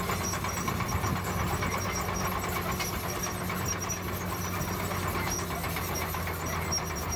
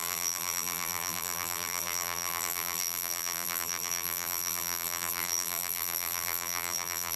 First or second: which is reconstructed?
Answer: second